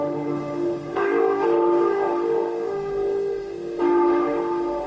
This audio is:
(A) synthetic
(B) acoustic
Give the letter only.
A